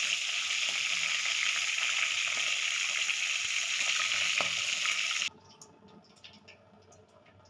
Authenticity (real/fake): real